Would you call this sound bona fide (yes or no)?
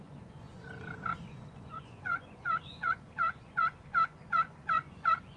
no